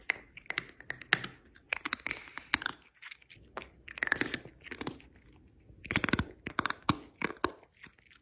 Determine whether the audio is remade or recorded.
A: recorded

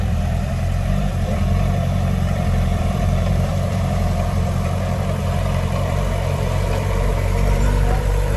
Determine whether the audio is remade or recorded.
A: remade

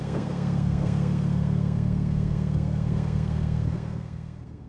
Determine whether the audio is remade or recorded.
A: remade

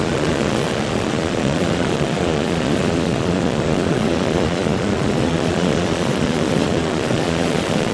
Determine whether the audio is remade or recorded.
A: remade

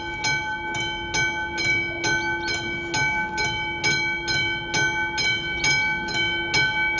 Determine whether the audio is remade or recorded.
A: recorded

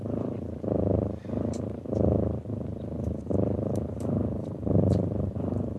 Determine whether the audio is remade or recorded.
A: remade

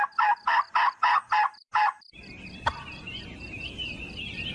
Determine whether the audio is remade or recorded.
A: recorded